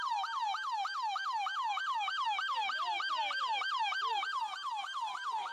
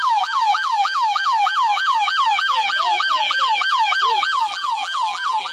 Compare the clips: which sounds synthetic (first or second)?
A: second